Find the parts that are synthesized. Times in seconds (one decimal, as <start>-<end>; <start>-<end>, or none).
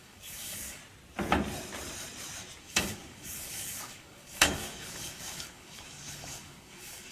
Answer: 0.0-0.8; 2.6-7.1